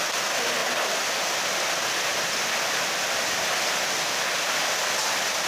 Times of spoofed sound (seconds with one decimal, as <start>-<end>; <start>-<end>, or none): none